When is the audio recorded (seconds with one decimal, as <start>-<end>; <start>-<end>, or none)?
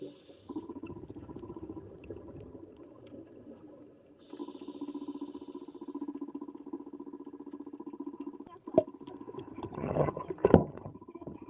0.0-0.4; 2.8-9.5; 10.2-10.6